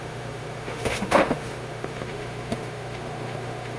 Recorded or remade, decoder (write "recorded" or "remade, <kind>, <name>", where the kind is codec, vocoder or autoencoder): remade, autoencoder, DAC-VAE